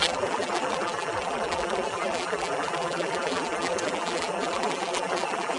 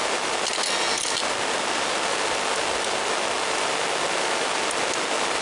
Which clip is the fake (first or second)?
first